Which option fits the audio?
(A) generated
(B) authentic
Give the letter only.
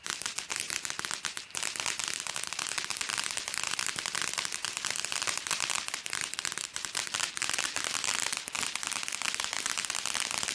B